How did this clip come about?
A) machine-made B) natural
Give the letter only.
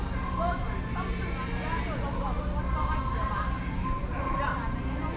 B